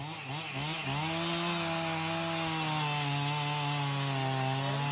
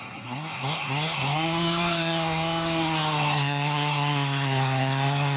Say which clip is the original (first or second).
first